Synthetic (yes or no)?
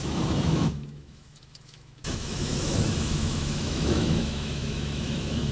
yes